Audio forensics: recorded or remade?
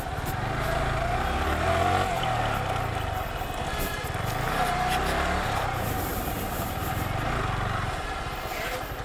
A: recorded